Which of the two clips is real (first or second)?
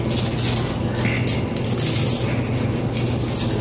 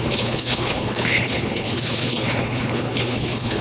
first